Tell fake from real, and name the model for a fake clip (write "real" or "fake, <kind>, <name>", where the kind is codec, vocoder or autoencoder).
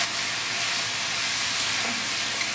real